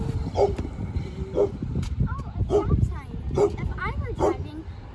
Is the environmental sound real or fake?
real